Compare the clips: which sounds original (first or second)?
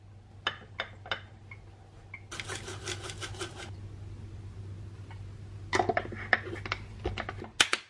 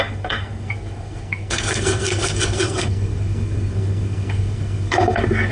first